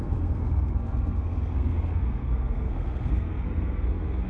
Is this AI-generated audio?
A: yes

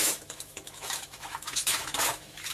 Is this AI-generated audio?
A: yes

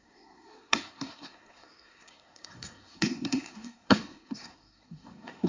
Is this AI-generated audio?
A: yes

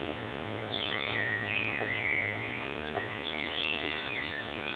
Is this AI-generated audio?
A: yes